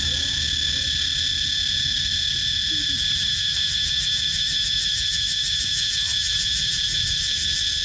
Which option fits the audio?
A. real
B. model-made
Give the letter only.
A